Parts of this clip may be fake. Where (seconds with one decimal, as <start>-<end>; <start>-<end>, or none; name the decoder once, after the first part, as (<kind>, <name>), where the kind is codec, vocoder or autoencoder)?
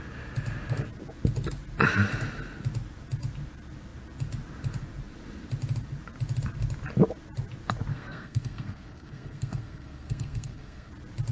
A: 7.9-10.9 (codec, SNAC)